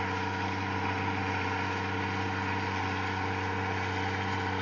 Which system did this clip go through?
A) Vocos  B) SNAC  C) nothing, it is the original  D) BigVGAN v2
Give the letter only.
C